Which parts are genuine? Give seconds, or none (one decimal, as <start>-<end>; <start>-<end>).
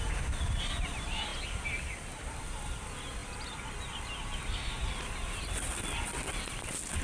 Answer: 0.0-7.0